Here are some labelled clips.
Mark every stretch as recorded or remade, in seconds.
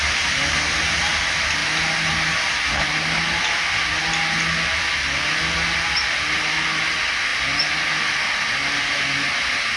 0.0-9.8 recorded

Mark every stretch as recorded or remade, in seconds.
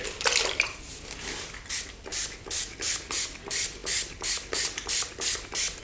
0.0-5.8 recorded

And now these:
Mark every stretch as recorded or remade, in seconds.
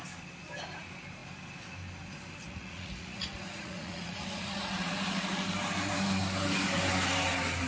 0.0-2.4 recorded; 2.4-4.9 remade; 4.9-7.7 recorded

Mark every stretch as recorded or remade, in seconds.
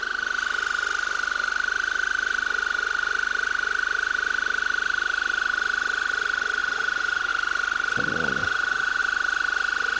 0.0-6.6 recorded; 6.6-7.3 remade; 7.3-8.4 recorded; 8.4-9.0 remade; 9.0-10.0 recorded